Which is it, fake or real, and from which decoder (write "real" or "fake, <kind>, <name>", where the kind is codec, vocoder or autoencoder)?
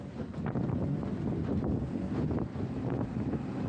fake, vocoder, BigVGAN v2